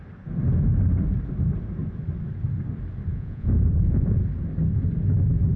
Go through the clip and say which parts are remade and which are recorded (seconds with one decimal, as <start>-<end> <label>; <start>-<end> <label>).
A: 0.0-3.1 recorded; 3.1-4.2 remade; 4.2-5.6 recorded